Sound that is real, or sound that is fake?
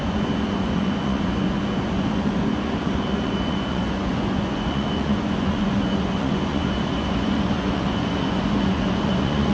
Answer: fake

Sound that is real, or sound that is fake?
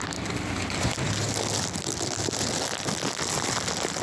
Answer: real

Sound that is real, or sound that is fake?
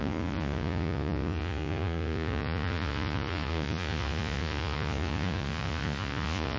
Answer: fake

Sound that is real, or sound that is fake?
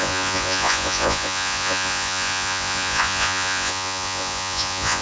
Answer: fake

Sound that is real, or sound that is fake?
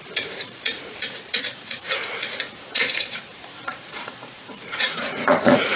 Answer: fake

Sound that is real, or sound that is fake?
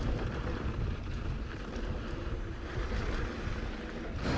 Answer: real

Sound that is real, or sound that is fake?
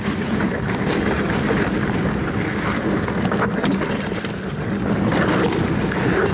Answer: real